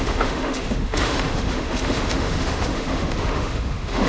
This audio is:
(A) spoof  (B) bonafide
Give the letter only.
A